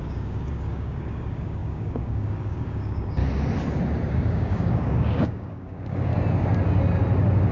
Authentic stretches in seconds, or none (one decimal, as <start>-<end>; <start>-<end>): 3.2-4.1; 6.1-7.5